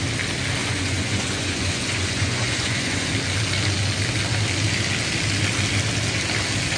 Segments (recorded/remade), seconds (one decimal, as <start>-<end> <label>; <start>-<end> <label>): 0.0-0.6 recorded; 0.6-3.1 remade; 3.1-6.8 recorded